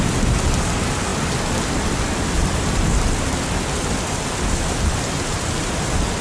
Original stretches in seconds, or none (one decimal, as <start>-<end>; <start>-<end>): 0.0-6.2